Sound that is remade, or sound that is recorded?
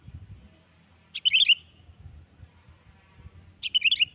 recorded